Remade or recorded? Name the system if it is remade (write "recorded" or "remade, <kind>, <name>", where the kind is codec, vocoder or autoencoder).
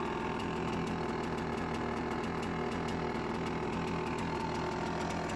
recorded